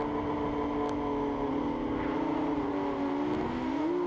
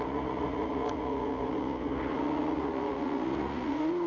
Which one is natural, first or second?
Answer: first